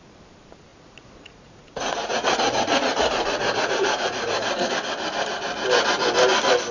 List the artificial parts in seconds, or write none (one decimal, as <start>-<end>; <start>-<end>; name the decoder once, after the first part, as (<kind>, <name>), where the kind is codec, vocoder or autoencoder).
0.7-4.7 (vocoder, Vocos)